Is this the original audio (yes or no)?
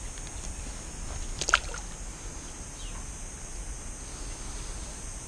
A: yes